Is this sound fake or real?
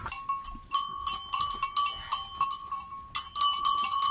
real